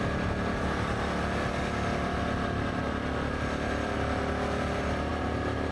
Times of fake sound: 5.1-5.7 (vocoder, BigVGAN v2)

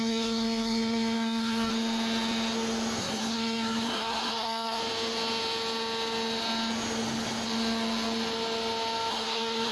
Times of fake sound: 0.0-1.7 (codec, SNAC); 3.0-4.8; 9.1-9.7